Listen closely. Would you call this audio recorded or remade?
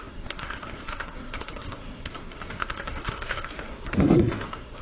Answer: remade